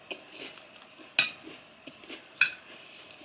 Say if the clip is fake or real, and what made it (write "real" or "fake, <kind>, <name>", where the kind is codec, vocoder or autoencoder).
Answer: real